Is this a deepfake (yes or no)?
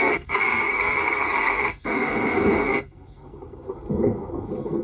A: yes